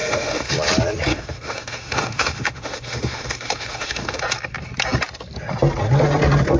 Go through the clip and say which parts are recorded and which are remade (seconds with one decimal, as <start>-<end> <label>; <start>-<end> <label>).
0.0-0.5 remade; 0.5-1.1 recorded; 1.1-4.2 remade; 4.2-6.6 recorded